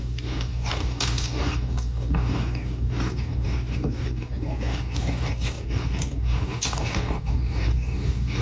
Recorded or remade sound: remade